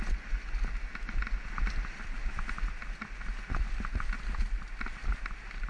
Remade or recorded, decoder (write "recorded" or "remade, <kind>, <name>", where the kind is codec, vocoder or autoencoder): recorded